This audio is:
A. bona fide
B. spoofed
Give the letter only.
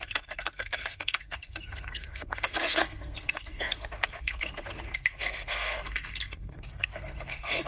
B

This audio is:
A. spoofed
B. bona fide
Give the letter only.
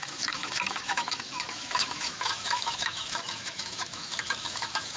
A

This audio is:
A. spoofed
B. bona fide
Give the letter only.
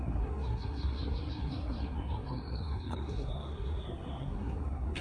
A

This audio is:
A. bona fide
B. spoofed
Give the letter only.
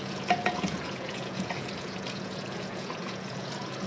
B